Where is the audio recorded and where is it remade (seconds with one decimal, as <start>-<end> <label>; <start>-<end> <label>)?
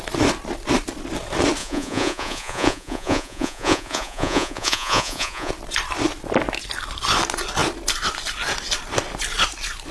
0.0-1.6 recorded; 1.6-5.5 remade; 5.5-9.9 recorded